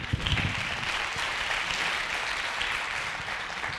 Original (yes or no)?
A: yes